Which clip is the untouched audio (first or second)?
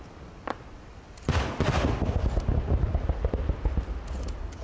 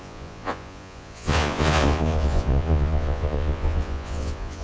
first